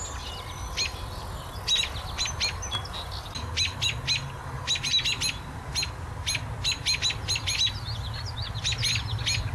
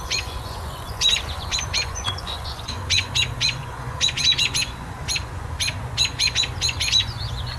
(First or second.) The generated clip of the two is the second